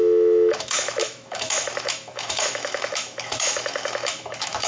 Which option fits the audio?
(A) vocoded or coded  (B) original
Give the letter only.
A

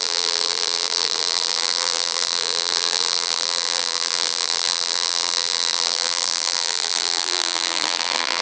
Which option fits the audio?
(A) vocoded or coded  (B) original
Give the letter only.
A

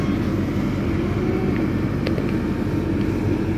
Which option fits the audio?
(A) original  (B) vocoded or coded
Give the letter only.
A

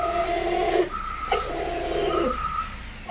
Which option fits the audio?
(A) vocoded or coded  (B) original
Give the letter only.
B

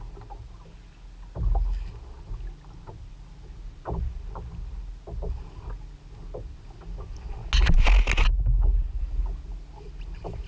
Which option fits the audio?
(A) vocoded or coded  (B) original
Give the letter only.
B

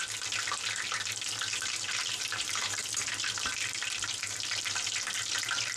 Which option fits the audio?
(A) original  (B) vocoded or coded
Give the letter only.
A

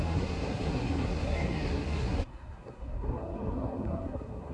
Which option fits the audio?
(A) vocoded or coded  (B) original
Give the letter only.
A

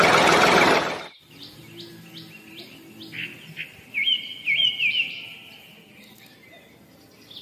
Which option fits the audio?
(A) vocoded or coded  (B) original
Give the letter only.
B